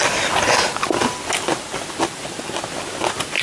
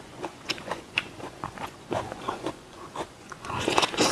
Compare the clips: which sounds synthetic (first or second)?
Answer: second